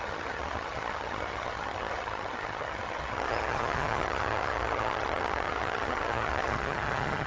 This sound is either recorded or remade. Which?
remade